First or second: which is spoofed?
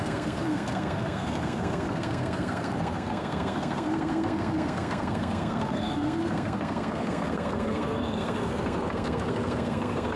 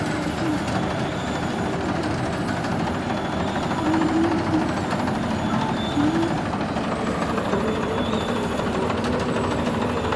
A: first